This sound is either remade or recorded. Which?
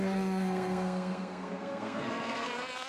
remade